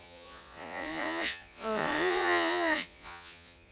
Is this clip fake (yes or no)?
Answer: yes